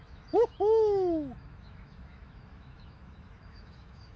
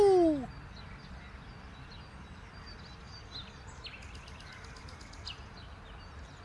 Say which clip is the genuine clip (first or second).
second